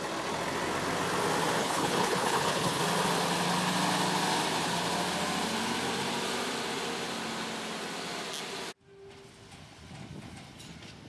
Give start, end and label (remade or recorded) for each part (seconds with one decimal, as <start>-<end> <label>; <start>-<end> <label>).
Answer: 0.0-1.6 recorded; 1.6-2.8 remade; 2.8-11.1 recorded

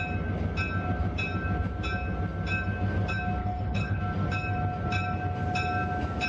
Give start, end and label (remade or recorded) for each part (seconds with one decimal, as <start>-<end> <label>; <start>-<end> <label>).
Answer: 0.0-3.4 recorded; 3.4-4.0 remade; 4.0-6.3 recorded